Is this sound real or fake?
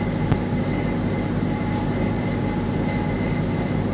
real